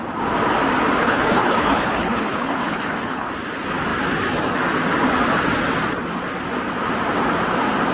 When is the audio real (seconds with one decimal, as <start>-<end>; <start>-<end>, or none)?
0.0-1.0; 3.3-7.9